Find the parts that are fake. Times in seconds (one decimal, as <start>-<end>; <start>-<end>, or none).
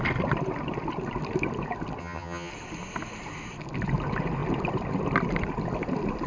2.0-2.5